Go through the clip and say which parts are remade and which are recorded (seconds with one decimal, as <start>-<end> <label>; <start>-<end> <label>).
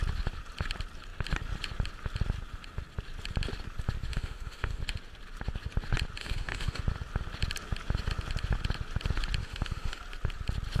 0.0-4.1 recorded; 4.1-4.8 remade; 4.8-6.2 recorded; 6.2-6.8 remade; 6.8-9.4 recorded; 9.4-10.0 remade; 10.0-10.8 recorded